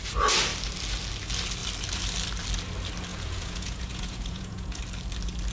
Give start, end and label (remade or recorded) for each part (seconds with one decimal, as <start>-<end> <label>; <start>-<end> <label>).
0.0-3.1 recorded; 3.1-4.8 remade; 4.8-5.5 recorded